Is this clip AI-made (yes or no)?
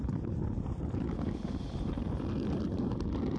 no